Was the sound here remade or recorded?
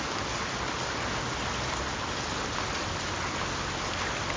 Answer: recorded